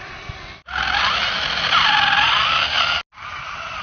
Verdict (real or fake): real